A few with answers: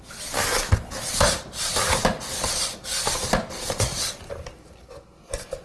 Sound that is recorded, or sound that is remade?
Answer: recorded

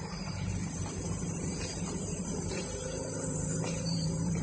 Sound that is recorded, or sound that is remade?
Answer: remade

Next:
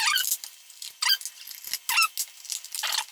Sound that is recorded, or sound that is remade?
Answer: recorded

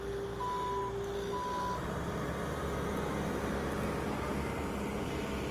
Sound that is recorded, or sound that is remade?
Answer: recorded